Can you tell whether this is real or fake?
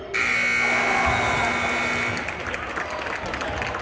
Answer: real